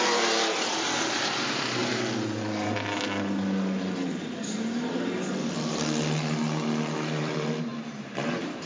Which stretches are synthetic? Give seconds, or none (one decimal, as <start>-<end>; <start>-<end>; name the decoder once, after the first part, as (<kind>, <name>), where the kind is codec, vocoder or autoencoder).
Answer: 0.0-1.8 (vocoder, BigVGAN v2); 7.0-8.7